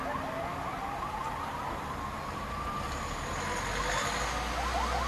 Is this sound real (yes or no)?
yes